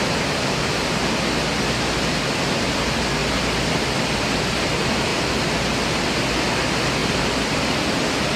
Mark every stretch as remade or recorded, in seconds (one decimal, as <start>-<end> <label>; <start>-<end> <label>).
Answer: 0.0-8.4 recorded